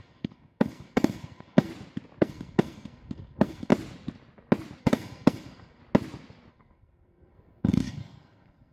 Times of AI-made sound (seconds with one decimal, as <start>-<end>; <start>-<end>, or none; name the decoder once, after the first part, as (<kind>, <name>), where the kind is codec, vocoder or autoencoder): 0.0-1.7 (codec, SNAC); 2.2-3.7; 4.8-5.8; 6.5-8.7

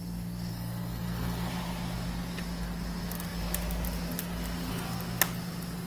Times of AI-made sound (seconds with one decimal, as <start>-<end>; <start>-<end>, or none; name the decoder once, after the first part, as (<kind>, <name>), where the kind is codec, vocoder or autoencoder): 0.5-1.5 (codec, SNAC)

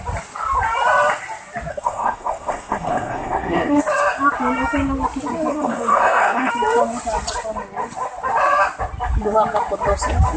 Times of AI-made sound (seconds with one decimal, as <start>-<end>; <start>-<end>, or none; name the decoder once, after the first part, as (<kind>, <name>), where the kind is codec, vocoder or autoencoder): 1.7-3.8 (codec, SNAC); 5.5-6.5